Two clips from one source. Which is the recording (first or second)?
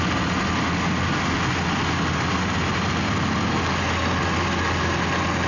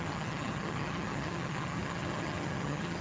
first